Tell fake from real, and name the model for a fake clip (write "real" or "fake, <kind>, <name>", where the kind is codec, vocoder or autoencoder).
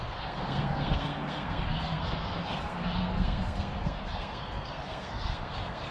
fake, codec, SNAC